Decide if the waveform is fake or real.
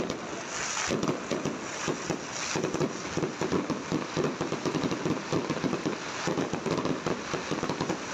real